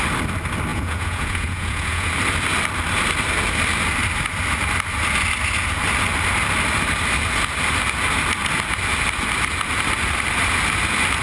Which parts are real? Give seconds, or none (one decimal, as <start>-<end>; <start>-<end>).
0.0-0.7; 2.1-11.2